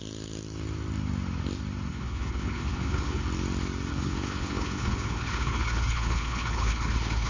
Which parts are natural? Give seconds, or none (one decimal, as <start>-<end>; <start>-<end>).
0.0-1.9; 3.2-3.9

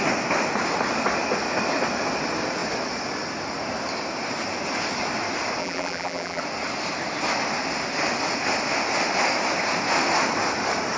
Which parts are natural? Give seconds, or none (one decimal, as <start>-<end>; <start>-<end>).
0.0-5.6; 6.4-11.0

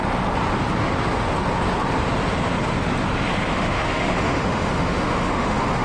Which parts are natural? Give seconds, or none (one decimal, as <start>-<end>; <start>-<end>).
0.0-3.5

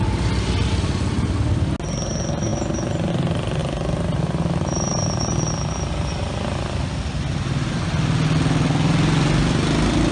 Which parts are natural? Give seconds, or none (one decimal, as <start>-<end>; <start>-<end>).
0.0-10.1

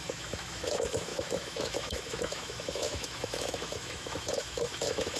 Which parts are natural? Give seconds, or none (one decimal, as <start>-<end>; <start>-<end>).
none

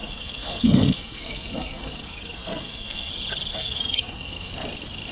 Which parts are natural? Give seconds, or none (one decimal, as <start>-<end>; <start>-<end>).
3.1-3.5; 4.5-5.1

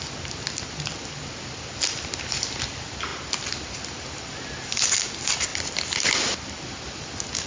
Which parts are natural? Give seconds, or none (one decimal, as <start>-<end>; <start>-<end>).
0.0-7.5

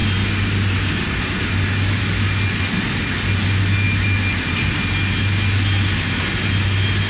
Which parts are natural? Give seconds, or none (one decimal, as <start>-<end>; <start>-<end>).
0.0-7.1